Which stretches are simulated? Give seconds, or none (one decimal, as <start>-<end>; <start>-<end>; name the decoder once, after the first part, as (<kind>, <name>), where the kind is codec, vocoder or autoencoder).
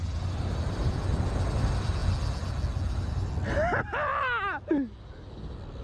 none